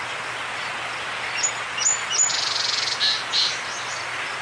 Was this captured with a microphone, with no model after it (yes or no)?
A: yes